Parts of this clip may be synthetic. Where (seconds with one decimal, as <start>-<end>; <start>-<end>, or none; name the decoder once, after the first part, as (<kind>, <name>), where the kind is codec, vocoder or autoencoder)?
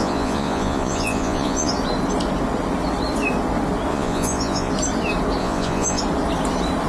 0.0-1.7 (vocoder, Vocos); 3.9-4.7; 5.4-6.0